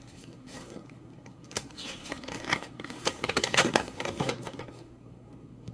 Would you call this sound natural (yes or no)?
no